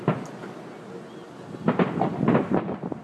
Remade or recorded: recorded